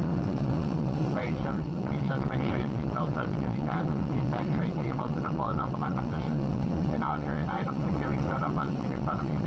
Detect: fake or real fake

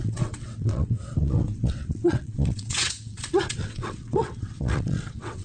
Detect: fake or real fake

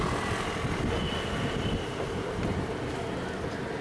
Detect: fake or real real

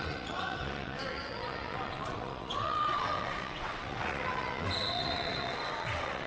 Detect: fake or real fake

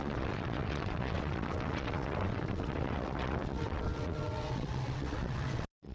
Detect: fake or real fake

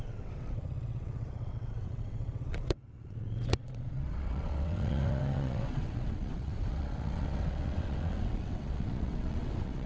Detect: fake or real fake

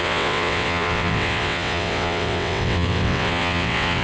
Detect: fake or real fake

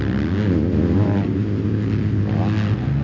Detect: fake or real real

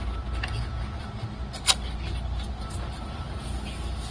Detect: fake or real real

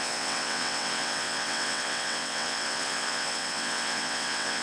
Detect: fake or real fake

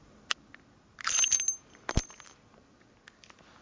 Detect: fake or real real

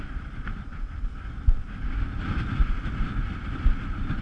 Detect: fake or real real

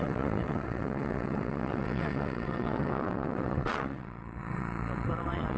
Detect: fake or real fake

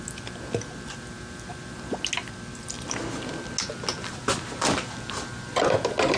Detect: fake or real real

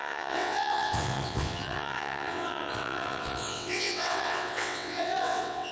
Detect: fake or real fake